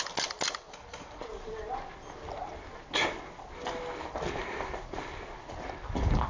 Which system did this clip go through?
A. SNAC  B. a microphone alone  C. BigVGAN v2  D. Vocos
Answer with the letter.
B